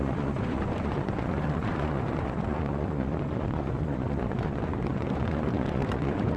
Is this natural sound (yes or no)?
no